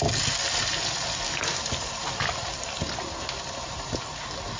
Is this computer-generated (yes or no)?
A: no